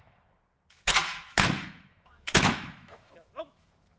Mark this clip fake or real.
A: fake